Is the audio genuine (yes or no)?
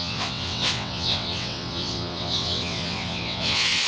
no